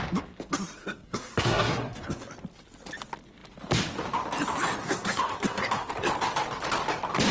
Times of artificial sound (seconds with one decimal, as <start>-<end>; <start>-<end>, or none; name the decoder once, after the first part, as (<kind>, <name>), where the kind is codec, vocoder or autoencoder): 0.8-2.3 (codec, SNAC); 4.8-5.9